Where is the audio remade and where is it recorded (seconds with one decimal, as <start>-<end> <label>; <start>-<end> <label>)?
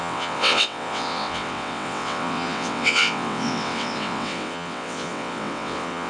0.0-6.1 remade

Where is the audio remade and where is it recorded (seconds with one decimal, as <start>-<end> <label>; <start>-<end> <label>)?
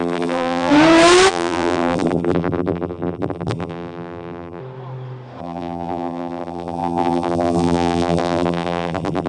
0.0-0.7 remade; 0.7-1.3 recorded; 1.3-4.6 remade; 4.6-5.4 recorded; 5.4-9.3 remade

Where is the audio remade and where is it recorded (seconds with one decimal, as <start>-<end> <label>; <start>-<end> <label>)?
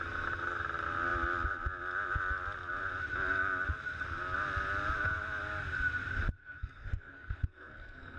0.0-6.4 recorded; 6.4-8.2 remade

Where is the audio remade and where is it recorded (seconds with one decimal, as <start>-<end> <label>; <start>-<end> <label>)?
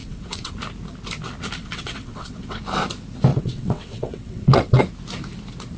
0.0-0.5 remade; 0.5-1.6 recorded; 1.6-2.6 remade; 2.6-3.3 recorded; 3.3-4.8 remade; 4.8-5.8 recorded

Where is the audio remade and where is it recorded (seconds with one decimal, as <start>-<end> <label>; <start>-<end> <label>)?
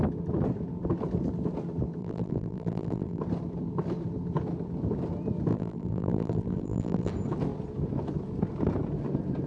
0.0-2.0 recorded; 2.0-3.2 remade; 3.2-5.5 recorded; 5.5-7.1 remade; 7.1-9.5 recorded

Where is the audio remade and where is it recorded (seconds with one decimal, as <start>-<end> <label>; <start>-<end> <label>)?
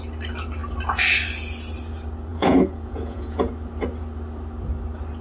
0.0-2.3 recorded; 2.3-3.5 remade; 3.5-5.2 recorded